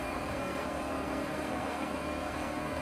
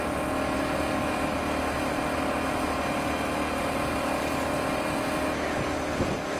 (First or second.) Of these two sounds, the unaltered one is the second